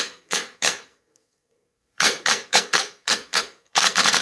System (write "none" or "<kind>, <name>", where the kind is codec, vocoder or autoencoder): codec, SNAC